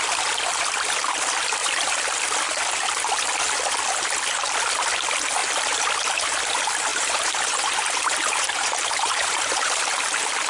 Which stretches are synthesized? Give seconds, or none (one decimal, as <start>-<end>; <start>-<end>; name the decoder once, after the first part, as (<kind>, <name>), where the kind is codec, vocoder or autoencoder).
6.9-9.7 (vocoder, BigVGAN v2)